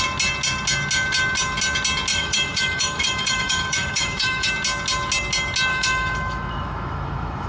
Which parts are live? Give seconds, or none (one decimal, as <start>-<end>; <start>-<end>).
0.0-2.1; 4.5-5.7